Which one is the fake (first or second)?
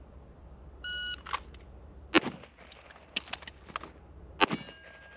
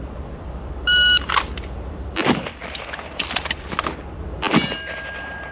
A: second